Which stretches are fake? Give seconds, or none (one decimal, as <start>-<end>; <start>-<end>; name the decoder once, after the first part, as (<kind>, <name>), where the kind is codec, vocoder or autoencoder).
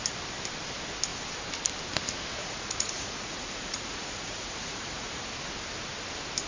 2.4-5.2 (vocoder, Vocos)